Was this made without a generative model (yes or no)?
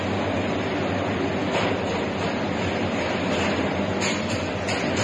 yes